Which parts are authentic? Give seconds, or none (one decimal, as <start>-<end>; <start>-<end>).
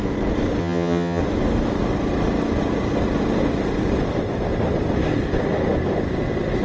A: 0.0-0.6; 1.2-6.6